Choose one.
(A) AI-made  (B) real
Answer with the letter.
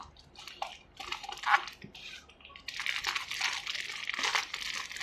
B